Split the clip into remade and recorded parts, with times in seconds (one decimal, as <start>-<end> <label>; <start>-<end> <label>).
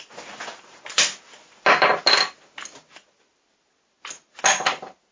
0.0-5.1 recorded